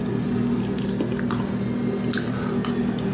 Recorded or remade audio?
recorded